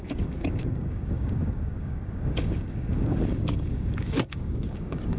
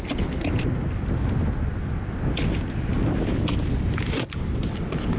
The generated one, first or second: first